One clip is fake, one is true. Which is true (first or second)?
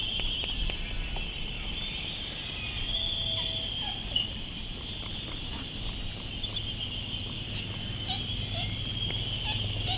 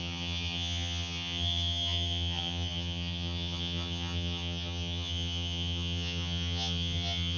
first